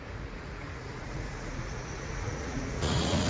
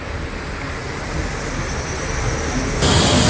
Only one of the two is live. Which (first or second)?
second